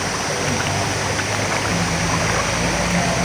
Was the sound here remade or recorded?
recorded